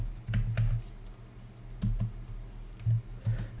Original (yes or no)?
yes